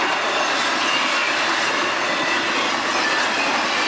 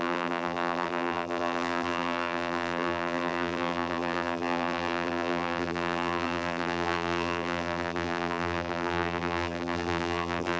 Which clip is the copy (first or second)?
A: second